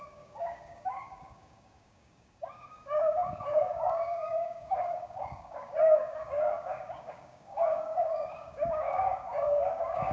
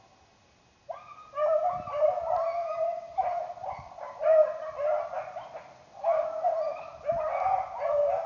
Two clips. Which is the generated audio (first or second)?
first